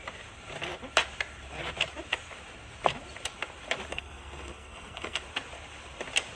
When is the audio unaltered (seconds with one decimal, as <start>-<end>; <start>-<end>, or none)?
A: 0.0-3.9; 5.2-6.4

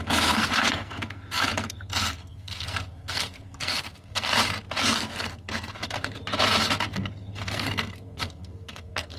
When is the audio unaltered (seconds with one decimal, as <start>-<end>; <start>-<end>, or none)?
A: 4.3-4.8; 6.2-6.9

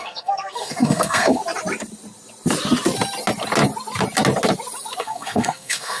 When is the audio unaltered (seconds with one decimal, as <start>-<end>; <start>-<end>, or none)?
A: 1.4-5.0

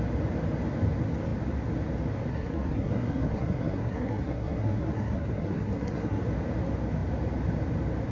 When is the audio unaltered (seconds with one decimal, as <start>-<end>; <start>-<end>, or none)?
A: 0.0-2.3; 6.2-8.1

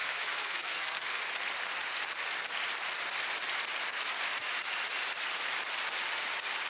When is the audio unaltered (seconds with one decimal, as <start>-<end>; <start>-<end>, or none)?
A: 1.2-6.7

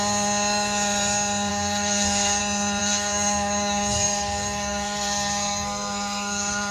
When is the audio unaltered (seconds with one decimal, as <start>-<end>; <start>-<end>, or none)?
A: 0.0-1.5; 2.4-2.8

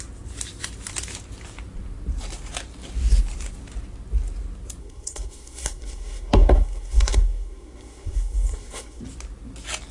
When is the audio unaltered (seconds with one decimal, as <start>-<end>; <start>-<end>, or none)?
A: 0.0-4.8; 9.0-9.9

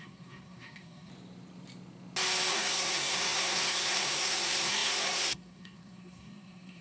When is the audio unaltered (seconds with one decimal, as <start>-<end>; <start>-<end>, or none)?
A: 1.1-2.5